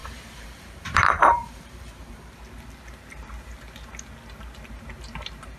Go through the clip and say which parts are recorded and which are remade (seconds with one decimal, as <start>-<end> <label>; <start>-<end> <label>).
0.0-2.3 remade; 2.3-5.6 recorded